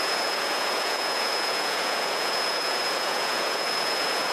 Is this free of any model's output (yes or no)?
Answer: no